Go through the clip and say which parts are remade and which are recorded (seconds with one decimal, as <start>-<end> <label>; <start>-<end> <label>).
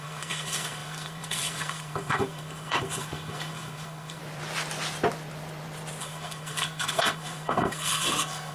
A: 0.0-4.2 remade; 4.2-6.0 recorded; 6.0-8.5 remade